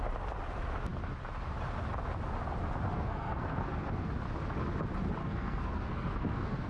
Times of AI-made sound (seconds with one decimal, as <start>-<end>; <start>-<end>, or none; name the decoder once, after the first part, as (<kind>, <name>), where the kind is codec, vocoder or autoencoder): 2.9-4.1 (codec, SNAC); 5.2-6.7